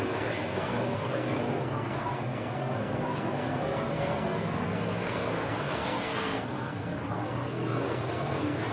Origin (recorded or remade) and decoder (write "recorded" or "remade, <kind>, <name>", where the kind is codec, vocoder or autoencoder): remade, codec, SNAC